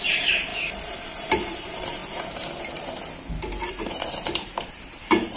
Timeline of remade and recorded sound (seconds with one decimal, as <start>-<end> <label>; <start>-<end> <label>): 0.0-0.5 remade; 0.5-1.5 recorded; 1.5-2.0 remade; 2.0-3.7 recorded; 3.7-5.4 remade